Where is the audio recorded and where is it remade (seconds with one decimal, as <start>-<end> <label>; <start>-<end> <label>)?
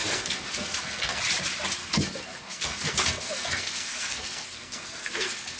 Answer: 0.0-1.2 remade; 1.2-1.8 recorded; 1.8-5.6 remade